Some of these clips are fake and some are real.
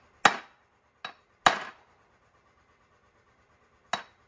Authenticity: real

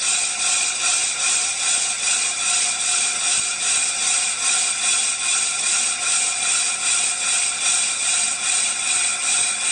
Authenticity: real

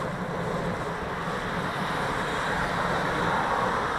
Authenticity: real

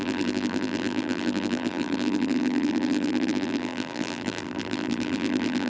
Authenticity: fake